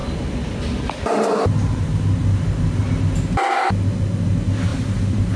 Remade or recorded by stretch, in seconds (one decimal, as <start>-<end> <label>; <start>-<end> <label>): 0.0-4.7 recorded; 4.7-5.4 remade